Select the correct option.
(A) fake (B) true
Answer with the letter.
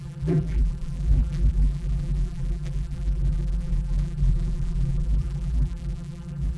A